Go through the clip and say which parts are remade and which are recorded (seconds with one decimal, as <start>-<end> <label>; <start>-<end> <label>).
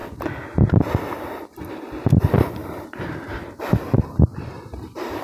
0.0-2.6 recorded; 2.6-5.2 remade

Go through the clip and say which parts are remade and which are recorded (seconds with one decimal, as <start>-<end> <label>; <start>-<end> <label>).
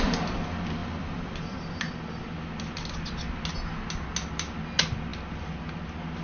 0.0-0.8 recorded; 0.8-1.9 remade; 1.9-6.2 recorded